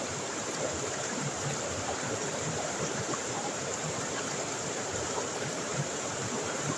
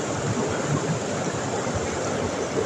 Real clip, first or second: second